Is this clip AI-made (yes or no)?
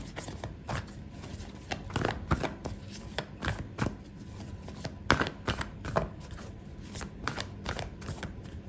no